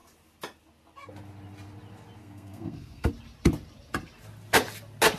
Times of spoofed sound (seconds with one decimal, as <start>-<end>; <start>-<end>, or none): 2.2-3.1